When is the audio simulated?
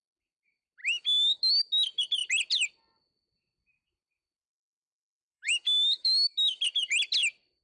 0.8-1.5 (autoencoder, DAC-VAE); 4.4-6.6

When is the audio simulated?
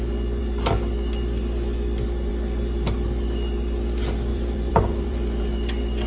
4.3-5.4 (vocoder, BigVGAN v2)